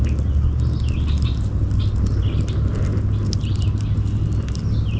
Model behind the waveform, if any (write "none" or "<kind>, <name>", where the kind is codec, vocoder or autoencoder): none